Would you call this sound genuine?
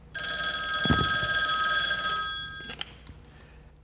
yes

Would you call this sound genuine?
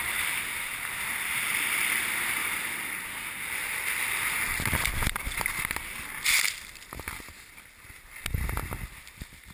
yes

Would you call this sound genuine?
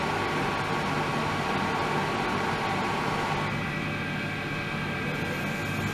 yes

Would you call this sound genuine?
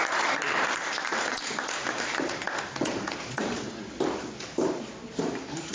no